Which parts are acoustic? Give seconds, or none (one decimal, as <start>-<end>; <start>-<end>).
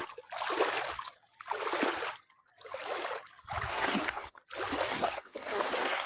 0.0-3.7; 4.4-4.9